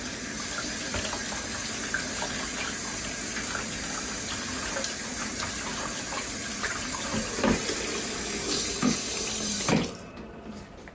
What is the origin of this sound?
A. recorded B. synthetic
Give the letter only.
A